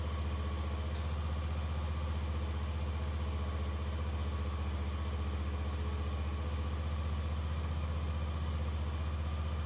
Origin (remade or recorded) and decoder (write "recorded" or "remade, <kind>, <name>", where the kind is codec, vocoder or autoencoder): recorded